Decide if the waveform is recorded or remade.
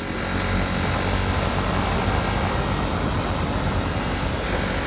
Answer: recorded